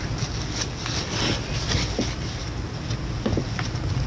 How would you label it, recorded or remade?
recorded